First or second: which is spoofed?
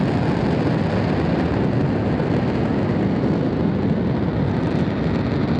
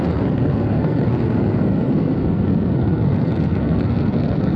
second